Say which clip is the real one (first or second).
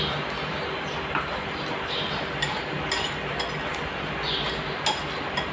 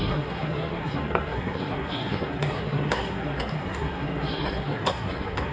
first